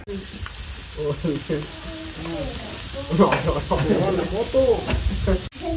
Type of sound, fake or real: real